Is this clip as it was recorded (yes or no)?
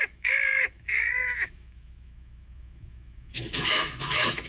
no